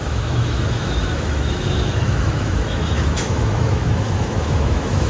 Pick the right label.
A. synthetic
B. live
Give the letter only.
A